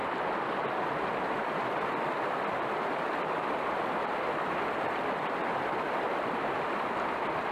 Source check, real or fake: fake